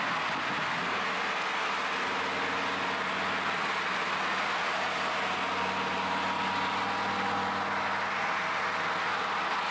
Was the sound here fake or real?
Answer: real